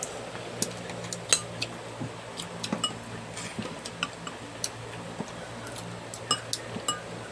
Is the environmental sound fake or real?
real